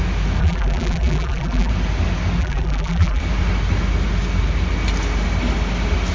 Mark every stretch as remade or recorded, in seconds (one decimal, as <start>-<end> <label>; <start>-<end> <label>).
0.0-0.4 recorded; 0.4-1.7 remade; 1.7-2.4 recorded; 2.4-3.2 remade; 3.2-6.1 recorded